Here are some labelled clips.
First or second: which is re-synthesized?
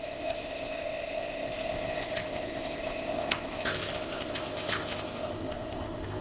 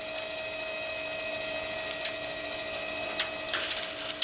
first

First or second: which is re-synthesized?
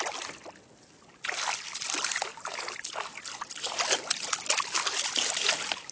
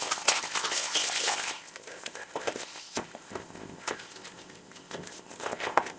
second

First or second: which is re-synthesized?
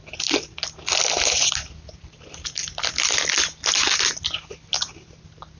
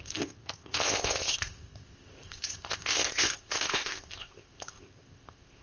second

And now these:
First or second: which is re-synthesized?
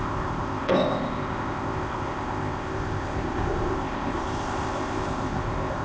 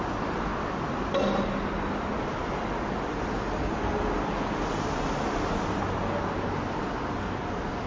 first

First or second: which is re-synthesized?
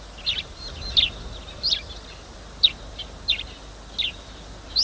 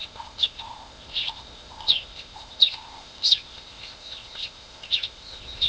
second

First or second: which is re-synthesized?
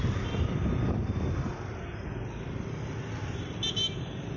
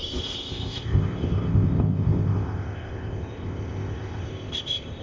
second